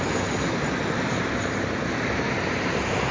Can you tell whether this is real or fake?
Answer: real